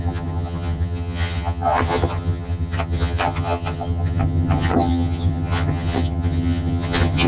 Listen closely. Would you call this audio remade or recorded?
remade